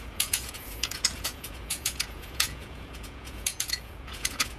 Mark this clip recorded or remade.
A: remade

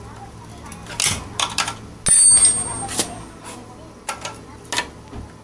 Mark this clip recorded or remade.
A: recorded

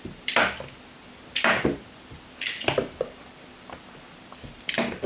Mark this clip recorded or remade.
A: remade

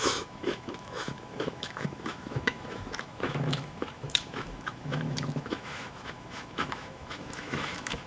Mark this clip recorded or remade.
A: remade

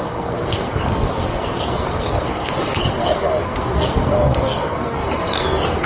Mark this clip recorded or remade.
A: remade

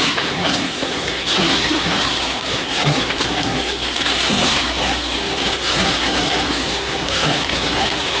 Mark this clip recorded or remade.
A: remade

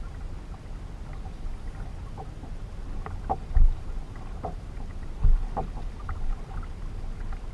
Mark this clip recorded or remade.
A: recorded